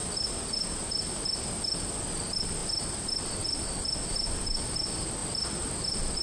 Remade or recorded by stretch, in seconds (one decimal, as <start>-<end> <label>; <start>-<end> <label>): 0.0-2.6 recorded; 2.6-4.6 remade; 4.6-6.2 recorded

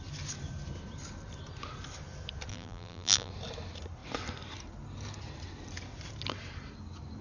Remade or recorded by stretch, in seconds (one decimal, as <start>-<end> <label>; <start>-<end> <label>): 0.0-2.5 recorded; 2.5-3.3 remade; 3.3-7.2 recorded

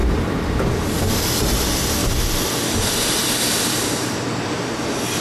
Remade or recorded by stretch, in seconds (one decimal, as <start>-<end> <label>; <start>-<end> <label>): 0.0-0.9 remade; 0.9-2.0 recorded; 2.0-3.1 remade; 3.1-5.2 recorded